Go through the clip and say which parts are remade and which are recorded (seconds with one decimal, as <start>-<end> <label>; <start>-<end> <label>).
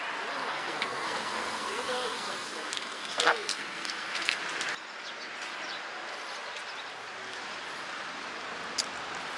0.0-0.4 recorded; 0.4-4.4 remade; 4.4-9.4 recorded